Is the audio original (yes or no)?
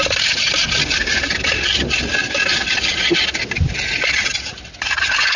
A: yes